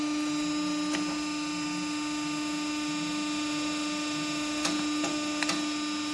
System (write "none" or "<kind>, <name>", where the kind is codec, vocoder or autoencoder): none